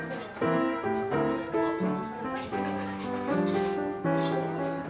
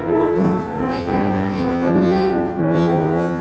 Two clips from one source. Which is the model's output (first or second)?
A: second